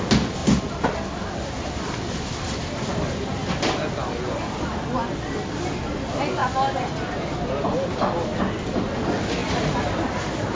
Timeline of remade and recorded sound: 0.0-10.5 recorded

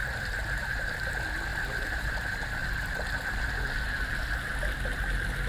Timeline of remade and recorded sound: 0.0-1.1 remade; 1.1-1.5 recorded; 1.5-2.1 remade; 2.1-5.5 recorded